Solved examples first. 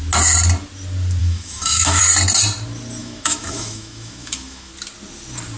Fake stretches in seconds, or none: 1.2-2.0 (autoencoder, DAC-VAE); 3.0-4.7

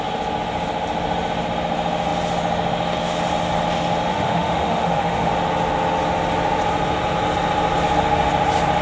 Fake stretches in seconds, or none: 4.1-5.3 (autoencoder, DAC-VAE)

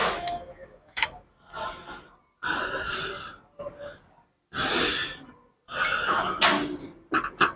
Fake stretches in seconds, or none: 0.0-1.2 (autoencoder, DAC-VAE)

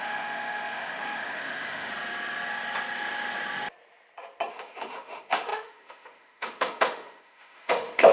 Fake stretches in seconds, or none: 0.0-1.9 (autoencoder, DAC-VAE); 4.5-8.1

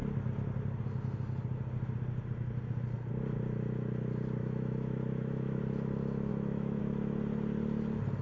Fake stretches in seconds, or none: 4.4-5.6 (autoencoder, DAC-VAE); 6.3-6.8

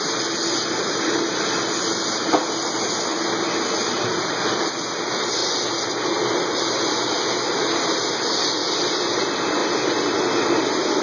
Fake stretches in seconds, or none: none

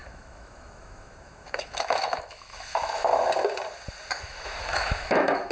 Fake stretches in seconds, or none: 0.0-3.1 (autoencoder, DAC-VAE); 4.2-5.5

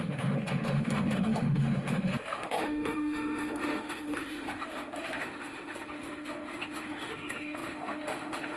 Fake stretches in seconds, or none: 0.0-8.6 (autoencoder, DAC-VAE)